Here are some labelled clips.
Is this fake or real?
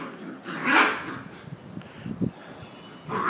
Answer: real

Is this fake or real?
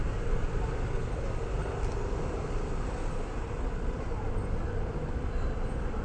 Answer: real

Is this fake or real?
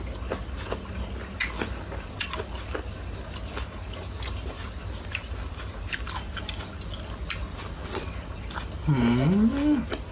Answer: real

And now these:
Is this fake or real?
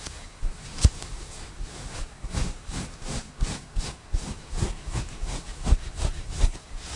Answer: fake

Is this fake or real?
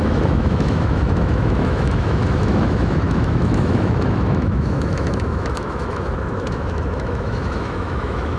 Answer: fake